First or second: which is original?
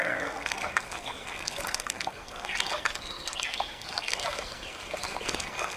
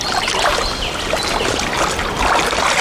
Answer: second